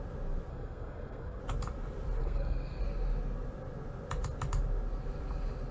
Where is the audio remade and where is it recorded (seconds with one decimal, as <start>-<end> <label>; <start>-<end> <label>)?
0.0-0.5 recorded; 0.5-1.4 remade; 1.4-2.2 recorded; 2.2-2.8 remade; 2.8-5.7 recorded